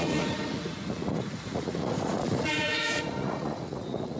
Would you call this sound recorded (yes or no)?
no